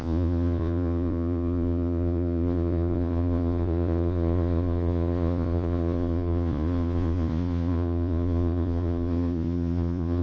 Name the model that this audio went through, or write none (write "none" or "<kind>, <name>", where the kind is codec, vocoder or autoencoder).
vocoder, Vocos